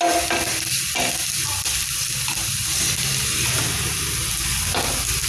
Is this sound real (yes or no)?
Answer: yes